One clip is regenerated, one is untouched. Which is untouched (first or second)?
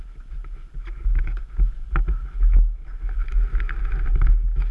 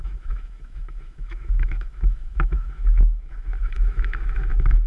first